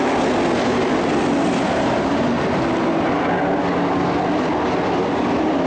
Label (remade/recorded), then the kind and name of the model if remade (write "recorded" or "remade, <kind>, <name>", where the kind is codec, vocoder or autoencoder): recorded